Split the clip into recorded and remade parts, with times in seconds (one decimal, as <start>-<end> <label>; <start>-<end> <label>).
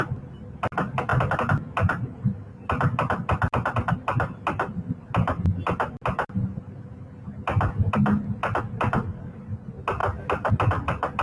0.0-11.2 recorded